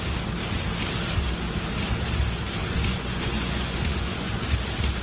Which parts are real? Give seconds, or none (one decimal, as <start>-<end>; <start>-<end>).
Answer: 0.0-2.6; 4.4-5.0